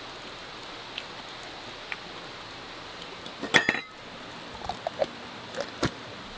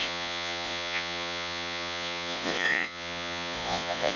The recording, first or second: first